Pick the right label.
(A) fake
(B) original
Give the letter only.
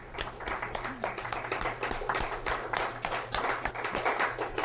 B